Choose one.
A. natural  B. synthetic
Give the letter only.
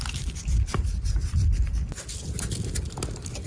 A